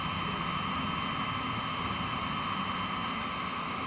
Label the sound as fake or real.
real